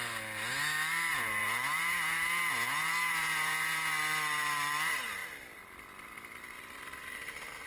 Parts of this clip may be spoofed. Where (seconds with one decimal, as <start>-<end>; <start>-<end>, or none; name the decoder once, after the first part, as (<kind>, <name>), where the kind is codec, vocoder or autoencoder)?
1.1-3.9 (vocoder, Vocos)